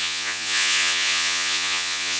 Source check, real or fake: fake